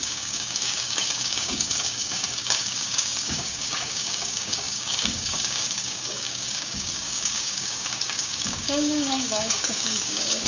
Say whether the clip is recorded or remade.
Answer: remade